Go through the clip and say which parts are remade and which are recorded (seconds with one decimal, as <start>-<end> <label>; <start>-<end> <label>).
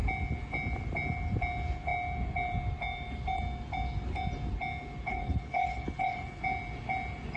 0.0-5.1 recorded; 5.1-6.4 remade; 6.4-7.4 recorded